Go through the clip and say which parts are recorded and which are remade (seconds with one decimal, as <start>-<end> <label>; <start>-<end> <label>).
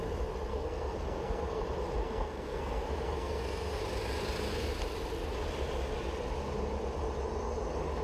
0.0-0.5 recorded; 0.5-1.6 remade; 1.6-2.0 recorded; 2.0-3.8 remade; 3.8-8.0 recorded